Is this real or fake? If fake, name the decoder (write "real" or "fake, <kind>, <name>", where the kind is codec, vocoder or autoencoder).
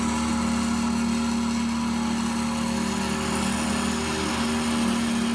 real